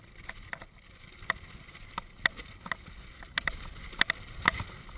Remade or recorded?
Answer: recorded